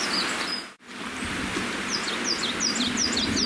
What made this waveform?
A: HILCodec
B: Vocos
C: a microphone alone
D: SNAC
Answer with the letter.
C